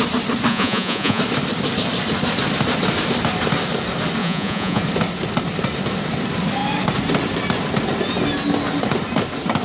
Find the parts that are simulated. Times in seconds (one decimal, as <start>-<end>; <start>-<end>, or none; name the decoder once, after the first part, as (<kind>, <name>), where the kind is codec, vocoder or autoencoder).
0.5-1.2 (vocoder, Vocos); 4.2-4.8